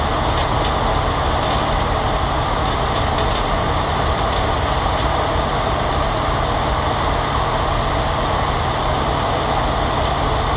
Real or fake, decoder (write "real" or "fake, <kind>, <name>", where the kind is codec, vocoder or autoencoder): real